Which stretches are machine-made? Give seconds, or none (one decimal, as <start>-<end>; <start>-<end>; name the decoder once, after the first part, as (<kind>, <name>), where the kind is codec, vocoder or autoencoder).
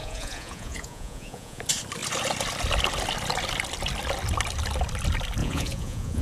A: 0.0-1.6 (vocoder, Vocos); 5.4-6.2